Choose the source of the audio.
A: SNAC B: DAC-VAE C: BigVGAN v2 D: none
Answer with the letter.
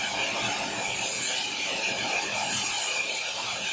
D